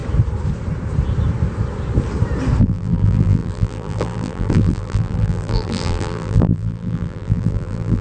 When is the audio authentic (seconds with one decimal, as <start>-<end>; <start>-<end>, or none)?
0.0-2.6